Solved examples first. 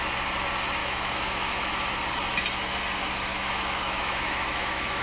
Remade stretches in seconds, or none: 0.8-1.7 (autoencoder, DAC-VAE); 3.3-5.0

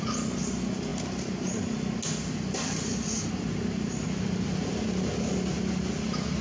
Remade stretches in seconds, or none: none

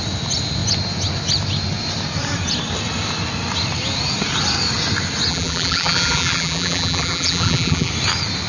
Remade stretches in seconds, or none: 5.3-7.9 (vocoder, BigVGAN v2)

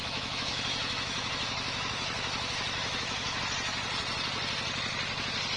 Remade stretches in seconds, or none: 0.0-3.4 (autoencoder, DAC-VAE)

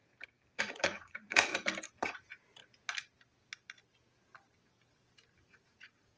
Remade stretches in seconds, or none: 0.6-1.5 (vocoder, Vocos); 2.0-2.6; 5.5-6.2

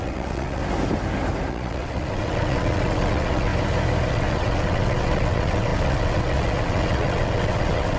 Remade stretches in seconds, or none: 0.0-0.6 (vocoder, WaveNeXt); 1.5-3.5; 4.1-8.0

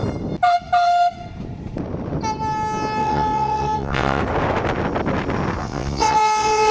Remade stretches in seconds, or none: 3.0-4.2 (vocoder, WaveNeXt); 5.6-6.7

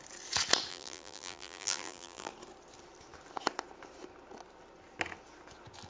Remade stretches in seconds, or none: 0.7-2.3 (vocoder, BigVGAN v2)